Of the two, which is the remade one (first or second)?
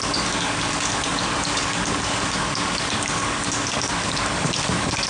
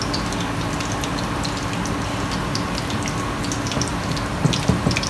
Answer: first